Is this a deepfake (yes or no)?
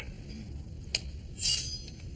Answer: no